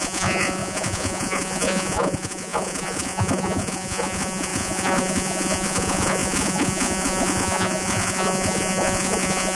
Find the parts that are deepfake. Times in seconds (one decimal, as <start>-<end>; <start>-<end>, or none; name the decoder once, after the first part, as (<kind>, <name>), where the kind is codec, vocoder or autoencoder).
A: 0.0-9.5 (vocoder, Vocos)